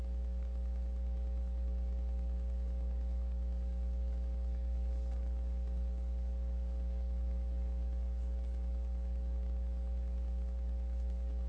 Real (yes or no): no